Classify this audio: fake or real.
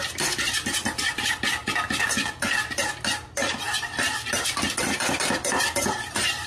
real